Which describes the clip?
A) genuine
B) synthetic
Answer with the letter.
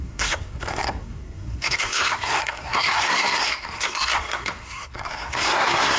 B